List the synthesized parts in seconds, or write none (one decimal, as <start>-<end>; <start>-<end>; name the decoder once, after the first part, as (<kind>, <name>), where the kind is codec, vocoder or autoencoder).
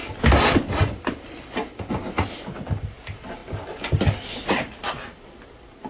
none